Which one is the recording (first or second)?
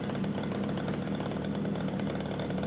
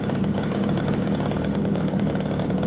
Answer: first